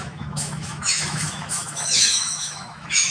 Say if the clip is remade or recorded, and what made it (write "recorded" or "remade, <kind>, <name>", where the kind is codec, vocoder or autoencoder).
remade, autoencoder, DAC-VAE